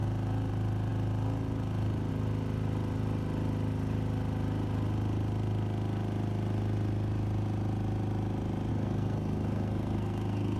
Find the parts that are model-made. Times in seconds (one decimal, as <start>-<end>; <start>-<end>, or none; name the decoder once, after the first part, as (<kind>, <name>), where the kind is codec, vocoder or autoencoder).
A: 8.7-10.6 (codec, SNAC)

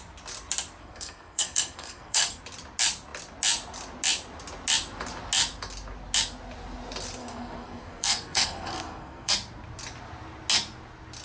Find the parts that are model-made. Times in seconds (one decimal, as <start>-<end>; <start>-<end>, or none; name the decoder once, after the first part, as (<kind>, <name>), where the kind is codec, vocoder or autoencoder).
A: 0.8-2.4 (codec, SNAC); 7.2-9.3

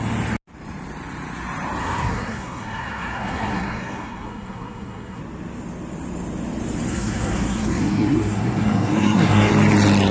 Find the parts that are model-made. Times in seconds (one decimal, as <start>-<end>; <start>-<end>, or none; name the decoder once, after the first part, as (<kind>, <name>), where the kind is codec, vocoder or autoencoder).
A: 1.8-5.2 (codec, SNAC); 6.9-9.5

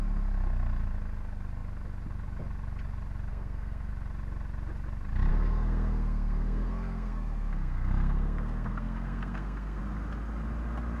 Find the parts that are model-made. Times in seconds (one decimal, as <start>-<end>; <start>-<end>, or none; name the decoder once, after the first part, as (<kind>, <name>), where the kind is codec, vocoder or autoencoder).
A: 3.3-3.9 (codec, SNAC); 5.3-9.8